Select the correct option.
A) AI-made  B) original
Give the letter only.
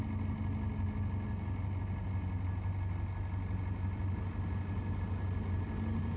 B